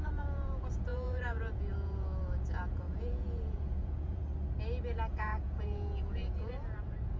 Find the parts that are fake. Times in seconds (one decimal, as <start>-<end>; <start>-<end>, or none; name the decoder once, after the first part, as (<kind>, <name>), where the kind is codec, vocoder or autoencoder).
0.0-4.2 (vocoder, Vocos); 5.1-7.2